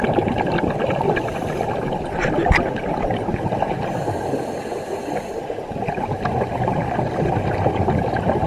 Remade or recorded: remade